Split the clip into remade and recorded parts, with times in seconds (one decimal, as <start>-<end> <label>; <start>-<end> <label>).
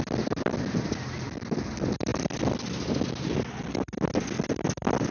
0.0-5.1 recorded